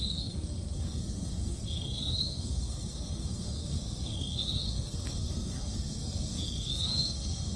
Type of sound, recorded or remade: remade